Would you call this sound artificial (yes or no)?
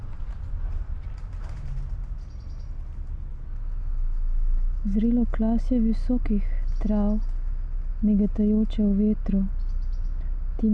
no